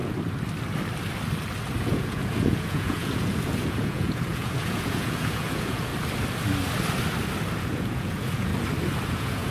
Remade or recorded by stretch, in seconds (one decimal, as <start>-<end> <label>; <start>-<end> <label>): 0.0-1.8 recorded; 1.8-5.9 remade; 5.9-7.6 recorded; 7.6-8.5 remade; 8.5-9.1 recorded; 9.1-9.5 remade